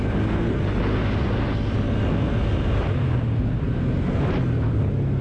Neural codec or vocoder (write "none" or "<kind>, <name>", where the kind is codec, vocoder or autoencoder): none